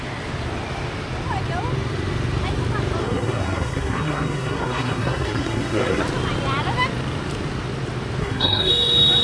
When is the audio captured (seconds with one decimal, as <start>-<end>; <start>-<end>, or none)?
0.0-3.0; 6.0-8.2; 8.7-9.2